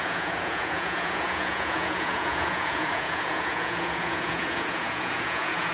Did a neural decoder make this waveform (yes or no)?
yes